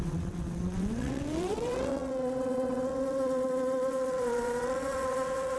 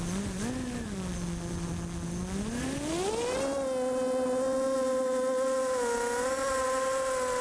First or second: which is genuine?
second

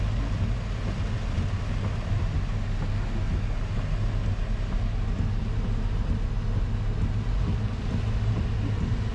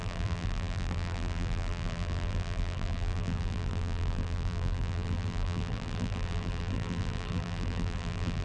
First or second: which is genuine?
first